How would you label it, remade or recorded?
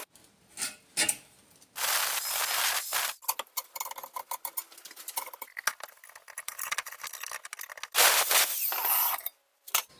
recorded